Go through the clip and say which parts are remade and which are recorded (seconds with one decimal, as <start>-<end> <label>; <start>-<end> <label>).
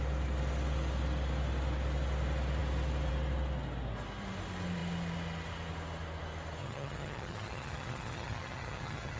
0.0-6.6 recorded; 6.6-9.2 remade